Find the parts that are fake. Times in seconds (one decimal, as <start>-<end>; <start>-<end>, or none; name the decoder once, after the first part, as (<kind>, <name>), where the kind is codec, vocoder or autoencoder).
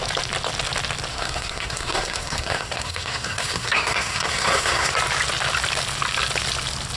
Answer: 1.1-4.9 (codec, SNAC)